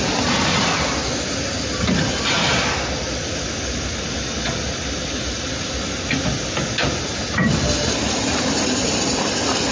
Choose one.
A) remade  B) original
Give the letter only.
B